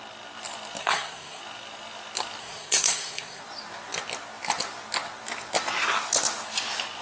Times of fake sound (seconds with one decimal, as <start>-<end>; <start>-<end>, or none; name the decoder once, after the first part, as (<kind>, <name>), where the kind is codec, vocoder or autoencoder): 0.8-1.4 (codec, SNAC); 2.4-3.4